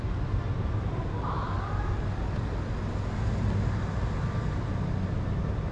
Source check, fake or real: real